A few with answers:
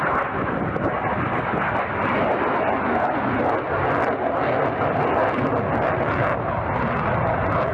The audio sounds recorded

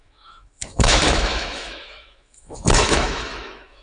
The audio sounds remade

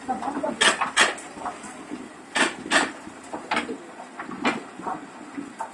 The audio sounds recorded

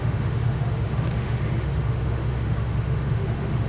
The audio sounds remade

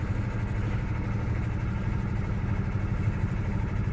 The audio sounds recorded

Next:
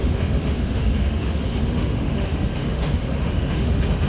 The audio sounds remade